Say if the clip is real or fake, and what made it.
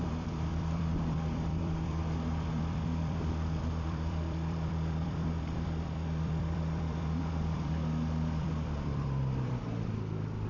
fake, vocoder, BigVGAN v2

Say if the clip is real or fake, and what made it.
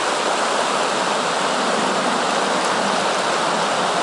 real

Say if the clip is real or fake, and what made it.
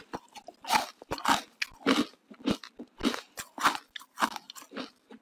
real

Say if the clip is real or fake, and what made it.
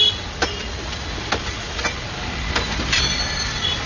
real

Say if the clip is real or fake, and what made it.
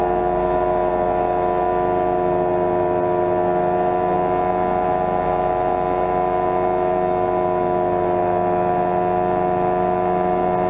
real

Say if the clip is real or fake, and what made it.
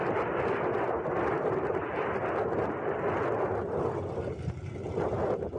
real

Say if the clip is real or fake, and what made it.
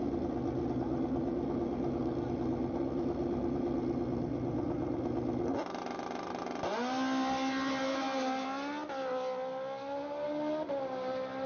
real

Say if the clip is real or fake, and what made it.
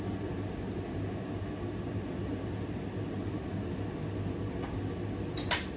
real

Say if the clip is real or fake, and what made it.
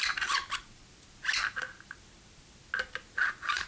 real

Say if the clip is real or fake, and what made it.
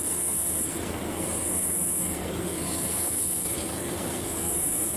fake, codec, SNAC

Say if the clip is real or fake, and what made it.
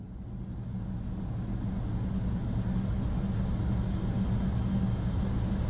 real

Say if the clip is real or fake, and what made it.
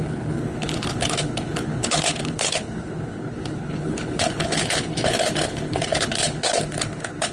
fake, codec, HILCodec